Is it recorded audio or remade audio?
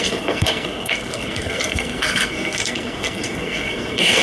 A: remade